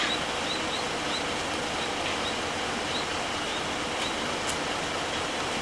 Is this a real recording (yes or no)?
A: yes